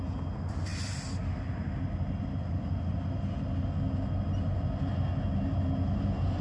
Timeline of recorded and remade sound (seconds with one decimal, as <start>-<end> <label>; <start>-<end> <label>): 0.0-6.4 recorded